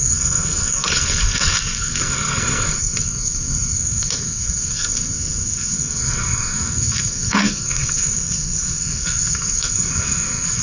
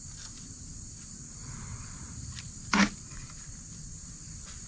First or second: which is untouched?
second